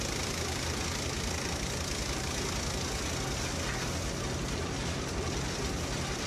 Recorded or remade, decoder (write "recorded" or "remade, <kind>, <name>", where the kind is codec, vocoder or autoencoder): recorded